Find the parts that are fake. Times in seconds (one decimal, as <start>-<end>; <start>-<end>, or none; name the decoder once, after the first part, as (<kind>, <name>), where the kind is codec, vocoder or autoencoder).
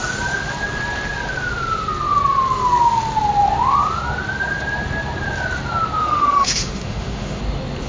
6.0-7.4 (autoencoder, DAC-VAE)